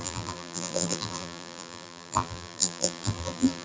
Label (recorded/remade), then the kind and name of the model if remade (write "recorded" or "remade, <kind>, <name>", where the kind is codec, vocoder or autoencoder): remade, vocoder, BigVGAN v2